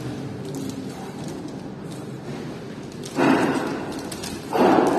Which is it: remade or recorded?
remade